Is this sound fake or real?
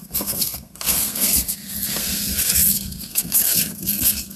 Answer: fake